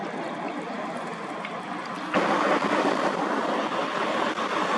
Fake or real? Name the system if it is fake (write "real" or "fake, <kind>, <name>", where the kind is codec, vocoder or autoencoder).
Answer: real